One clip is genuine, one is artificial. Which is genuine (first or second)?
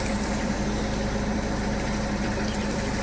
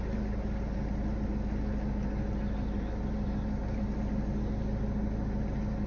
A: second